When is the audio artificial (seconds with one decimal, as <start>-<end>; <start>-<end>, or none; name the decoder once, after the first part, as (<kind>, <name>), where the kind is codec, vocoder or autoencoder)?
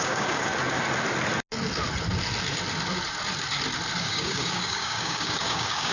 0.0-0.5 (codec, DAC); 4.0-5.9